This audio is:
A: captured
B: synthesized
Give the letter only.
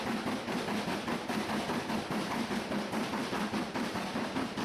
B